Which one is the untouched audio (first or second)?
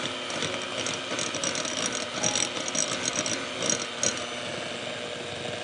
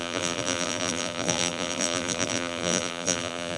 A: first